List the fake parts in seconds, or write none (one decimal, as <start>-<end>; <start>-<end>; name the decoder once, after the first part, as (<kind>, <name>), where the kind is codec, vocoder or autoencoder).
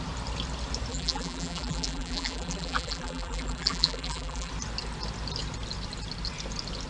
0.9-4.5 (vocoder, BigVGAN v2)